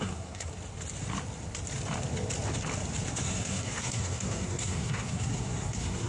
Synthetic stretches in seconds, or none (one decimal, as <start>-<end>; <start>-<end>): 0.0-0.5; 3.1-6.1